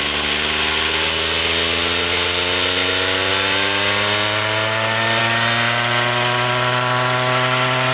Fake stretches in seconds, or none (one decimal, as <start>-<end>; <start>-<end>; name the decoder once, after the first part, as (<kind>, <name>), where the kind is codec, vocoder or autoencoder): none